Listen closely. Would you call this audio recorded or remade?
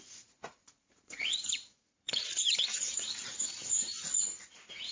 remade